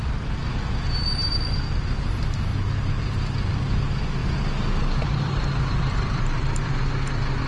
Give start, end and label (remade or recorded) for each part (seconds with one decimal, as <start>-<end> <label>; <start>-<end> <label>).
0.0-2.5 recorded; 2.5-3.8 remade; 3.8-4.2 recorded; 4.2-6.7 remade; 6.7-7.5 recorded